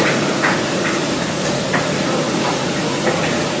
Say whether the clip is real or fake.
fake